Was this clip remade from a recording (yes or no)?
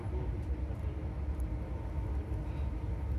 no